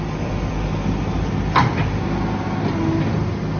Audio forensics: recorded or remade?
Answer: recorded